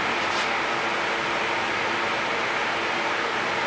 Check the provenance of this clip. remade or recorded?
recorded